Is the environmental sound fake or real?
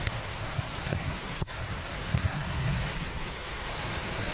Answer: fake